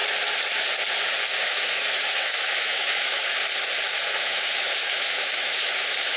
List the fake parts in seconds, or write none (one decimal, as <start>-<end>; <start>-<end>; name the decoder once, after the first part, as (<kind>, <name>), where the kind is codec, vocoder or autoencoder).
1.4-3.2 (autoencoder, DAC-VAE); 3.9-6.2